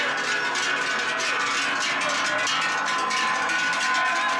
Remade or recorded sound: recorded